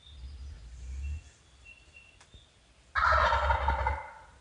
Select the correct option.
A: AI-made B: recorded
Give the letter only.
B